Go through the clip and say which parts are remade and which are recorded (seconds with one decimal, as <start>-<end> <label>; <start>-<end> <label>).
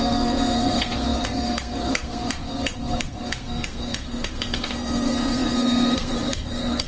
0.0-6.9 remade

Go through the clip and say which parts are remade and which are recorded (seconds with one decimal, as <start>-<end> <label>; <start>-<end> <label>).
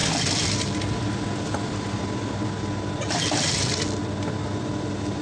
0.0-5.2 recorded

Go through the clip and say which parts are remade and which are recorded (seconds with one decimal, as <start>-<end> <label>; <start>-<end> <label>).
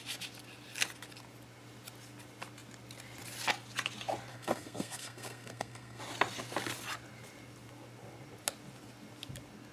0.0-4.3 recorded; 4.3-6.0 remade; 6.0-9.7 recorded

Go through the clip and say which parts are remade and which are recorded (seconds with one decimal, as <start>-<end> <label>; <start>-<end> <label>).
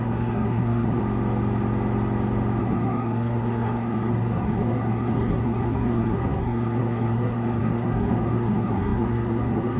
0.0-1.0 remade; 1.0-2.6 recorded; 2.6-9.8 remade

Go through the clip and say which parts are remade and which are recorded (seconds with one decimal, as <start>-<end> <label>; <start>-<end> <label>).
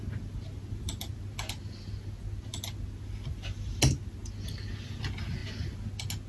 0.0-6.3 recorded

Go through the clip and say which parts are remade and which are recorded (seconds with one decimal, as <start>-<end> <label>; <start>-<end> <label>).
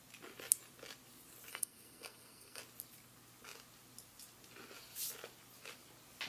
0.0-1.5 recorded; 1.5-2.6 remade; 2.6-6.3 recorded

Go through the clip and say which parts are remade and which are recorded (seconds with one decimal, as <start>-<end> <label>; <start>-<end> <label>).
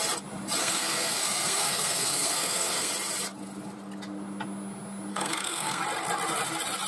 0.0-0.6 recorded; 0.6-2.9 remade; 2.9-5.1 recorded; 5.1-5.8 remade; 5.8-6.9 recorded